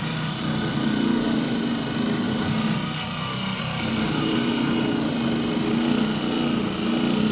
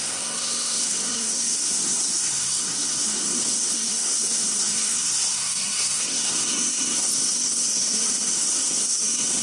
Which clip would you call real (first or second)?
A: first